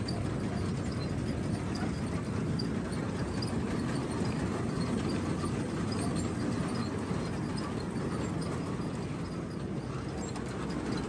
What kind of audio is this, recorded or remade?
recorded